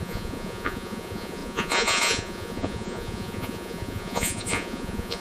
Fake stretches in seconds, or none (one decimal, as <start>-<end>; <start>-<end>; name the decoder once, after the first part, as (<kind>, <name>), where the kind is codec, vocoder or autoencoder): 0.0-5.2 (vocoder, Vocos)